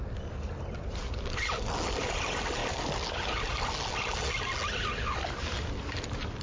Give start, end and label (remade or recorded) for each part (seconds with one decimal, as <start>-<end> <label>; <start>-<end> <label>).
0.0-6.4 recorded